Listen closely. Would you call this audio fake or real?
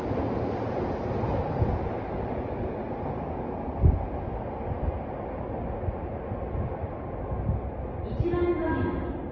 real